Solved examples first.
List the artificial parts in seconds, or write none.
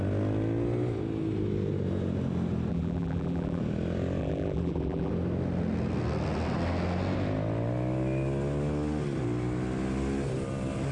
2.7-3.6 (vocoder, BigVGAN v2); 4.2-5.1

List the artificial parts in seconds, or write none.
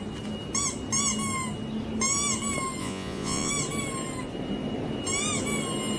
2.8-3.5 (vocoder, Vocos)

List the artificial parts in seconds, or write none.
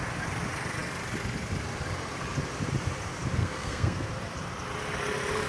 3.4-4.1 (codec, SNAC)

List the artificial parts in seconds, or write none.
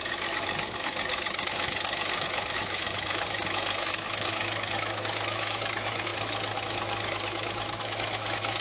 0.0-8.6 (autoencoder, DAC-VAE)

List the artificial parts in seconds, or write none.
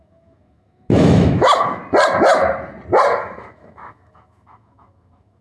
0.0-1.8 (autoencoder, DAC-VAE); 3.2-5.4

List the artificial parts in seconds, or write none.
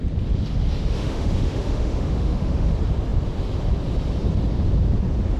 0.8-2.7 (autoencoder, DAC-VAE)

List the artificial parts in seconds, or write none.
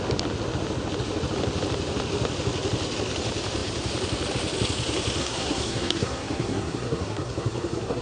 5.2-8.0 (codec, SNAC)